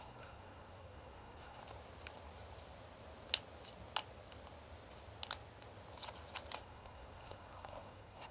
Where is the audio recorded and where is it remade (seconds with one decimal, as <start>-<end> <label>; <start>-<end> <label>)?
0.0-1.6 remade; 1.6-6.6 recorded; 6.6-8.3 remade